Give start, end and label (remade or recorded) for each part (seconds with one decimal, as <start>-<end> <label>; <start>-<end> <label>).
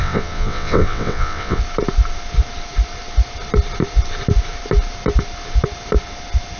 0.0-1.6 remade; 1.6-6.6 recorded